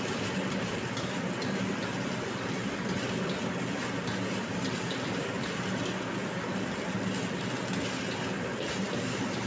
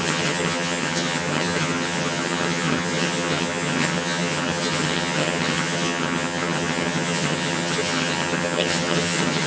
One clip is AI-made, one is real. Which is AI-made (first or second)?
second